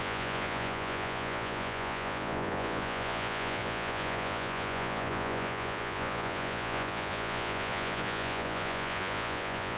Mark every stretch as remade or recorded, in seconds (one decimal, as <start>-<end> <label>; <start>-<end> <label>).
0.0-9.8 remade

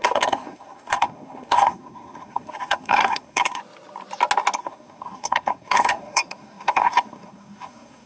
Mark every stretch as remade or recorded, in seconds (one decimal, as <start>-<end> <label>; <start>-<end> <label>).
0.0-3.6 remade; 3.6-4.6 recorded; 4.6-8.1 remade

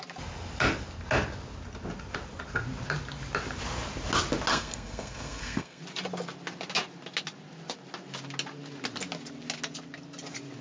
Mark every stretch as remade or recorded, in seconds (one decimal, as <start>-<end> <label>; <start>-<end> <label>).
0.0-4.5 recorded; 4.5-5.8 remade; 5.8-10.6 recorded

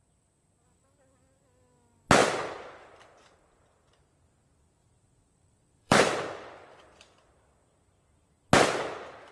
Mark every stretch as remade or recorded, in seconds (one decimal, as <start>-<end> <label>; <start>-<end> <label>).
0.0-2.2 recorded; 2.2-3.6 remade; 3.6-4.8 recorded; 4.8-7.3 remade; 7.3-9.3 recorded